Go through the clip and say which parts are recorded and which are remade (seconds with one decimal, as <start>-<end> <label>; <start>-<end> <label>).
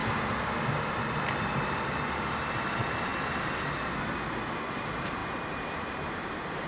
0.0-2.2 recorded; 2.2-3.1 remade; 3.1-4.3 recorded; 4.3-6.7 remade